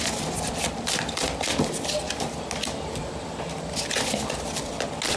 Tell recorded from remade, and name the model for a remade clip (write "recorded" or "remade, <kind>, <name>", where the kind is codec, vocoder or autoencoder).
recorded